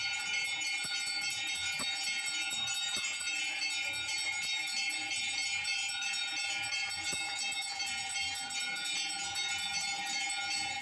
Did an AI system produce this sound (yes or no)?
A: yes